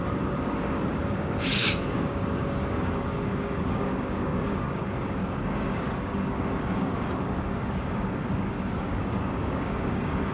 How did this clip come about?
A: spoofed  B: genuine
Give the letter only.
A